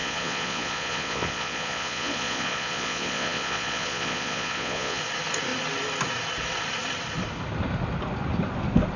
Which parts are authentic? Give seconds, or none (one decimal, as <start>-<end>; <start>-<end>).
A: 5.0-9.0